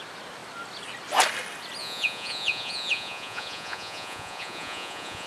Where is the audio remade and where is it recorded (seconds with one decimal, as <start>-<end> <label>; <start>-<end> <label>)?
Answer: 0.0-1.8 recorded; 1.8-5.3 remade

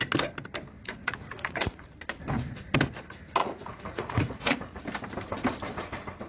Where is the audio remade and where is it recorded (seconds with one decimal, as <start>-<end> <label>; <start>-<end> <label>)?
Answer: 0.0-0.8 recorded; 0.8-1.9 remade; 1.9-3.4 recorded; 3.4-4.8 remade; 4.8-6.3 recorded

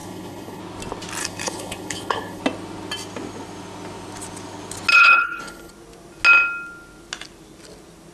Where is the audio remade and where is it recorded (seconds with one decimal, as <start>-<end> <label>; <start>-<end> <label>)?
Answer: 0.0-0.6 remade; 0.6-1.2 recorded; 1.2-2.4 remade; 2.4-4.9 recorded; 4.9-5.7 remade; 5.7-8.1 recorded

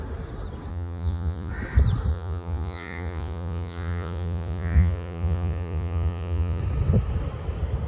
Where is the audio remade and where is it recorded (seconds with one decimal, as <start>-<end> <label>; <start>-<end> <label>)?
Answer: 0.0-0.7 recorded; 0.7-1.5 remade; 1.5-2.1 recorded; 2.1-6.6 remade; 6.6-7.9 recorded

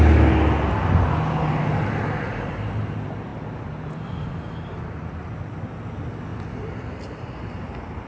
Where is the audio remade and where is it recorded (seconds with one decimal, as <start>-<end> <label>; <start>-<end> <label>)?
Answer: 0.0-8.1 recorded

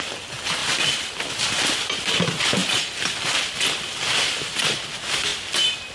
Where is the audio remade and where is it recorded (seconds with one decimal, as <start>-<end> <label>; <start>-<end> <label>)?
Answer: 0.0-5.9 recorded